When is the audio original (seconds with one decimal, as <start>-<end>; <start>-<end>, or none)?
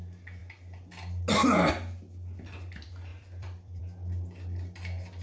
0.0-3.1; 3.8-5.2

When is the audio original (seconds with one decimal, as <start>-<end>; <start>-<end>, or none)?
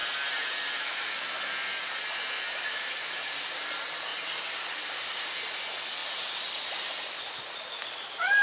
0.0-8.4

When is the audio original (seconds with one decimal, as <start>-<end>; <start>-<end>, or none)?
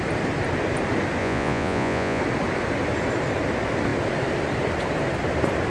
0.0-1.2; 2.2-5.7